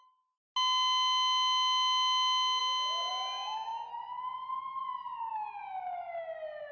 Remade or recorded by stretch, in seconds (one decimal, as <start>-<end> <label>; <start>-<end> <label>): 0.0-6.7 recorded